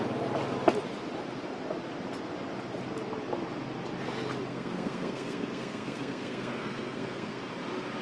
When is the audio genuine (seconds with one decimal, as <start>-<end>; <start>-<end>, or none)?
0.0-4.5; 7.5-8.0